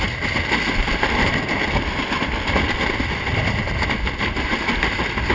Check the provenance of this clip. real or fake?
fake